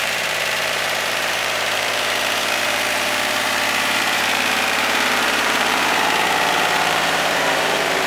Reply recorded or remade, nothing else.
remade